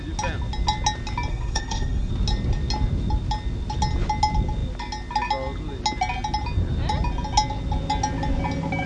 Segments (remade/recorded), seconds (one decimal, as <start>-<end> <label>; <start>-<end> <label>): 0.0-1.3 recorded; 1.3-2.1 remade; 2.1-8.9 recorded